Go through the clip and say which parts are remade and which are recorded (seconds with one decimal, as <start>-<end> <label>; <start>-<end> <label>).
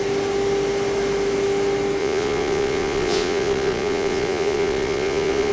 0.0-2.0 recorded; 2.0-5.5 remade